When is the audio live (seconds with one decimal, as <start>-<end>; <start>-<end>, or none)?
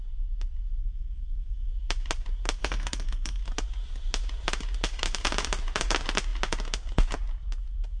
0.0-0.8; 1.7-2.6; 3.4-8.0